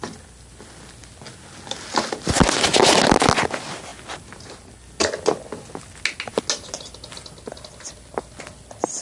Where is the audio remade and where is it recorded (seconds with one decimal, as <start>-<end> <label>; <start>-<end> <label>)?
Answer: 0.0-9.0 recorded

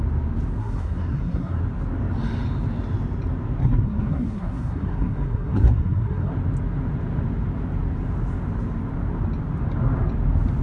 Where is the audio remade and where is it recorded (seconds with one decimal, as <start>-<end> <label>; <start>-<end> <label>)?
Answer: 0.0-0.6 recorded; 0.6-1.6 remade; 1.6-3.6 recorded; 3.6-6.3 remade; 6.3-10.6 recorded

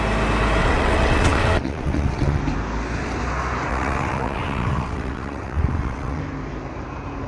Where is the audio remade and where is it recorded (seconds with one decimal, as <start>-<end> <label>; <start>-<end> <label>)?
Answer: 0.0-0.6 recorded; 0.6-2.4 remade; 2.4-3.7 recorded; 3.7-6.2 remade; 6.2-7.3 recorded

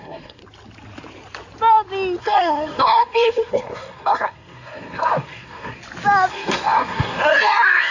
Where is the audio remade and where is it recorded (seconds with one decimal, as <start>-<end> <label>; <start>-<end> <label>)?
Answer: 0.0-0.4 remade; 0.4-2.2 recorded; 2.2-5.8 remade; 5.8-6.3 recorded; 6.3-7.9 remade

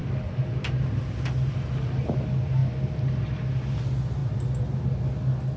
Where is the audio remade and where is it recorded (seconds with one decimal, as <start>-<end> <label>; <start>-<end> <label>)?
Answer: 0.0-5.6 recorded

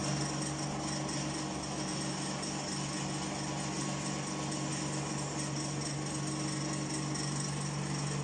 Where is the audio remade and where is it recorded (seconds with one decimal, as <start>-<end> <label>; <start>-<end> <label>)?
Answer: 0.0-8.2 recorded

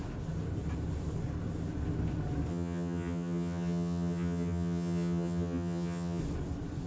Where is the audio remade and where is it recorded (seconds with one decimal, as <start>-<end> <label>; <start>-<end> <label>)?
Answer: 0.0-2.5 recorded; 2.5-6.2 remade; 6.2-6.9 recorded

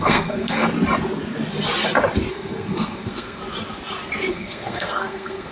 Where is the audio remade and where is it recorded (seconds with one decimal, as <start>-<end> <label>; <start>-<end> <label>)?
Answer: 0.0-0.6 remade; 0.6-2.3 recorded; 2.3-3.4 remade; 3.4-4.3 recorded; 4.3-5.5 remade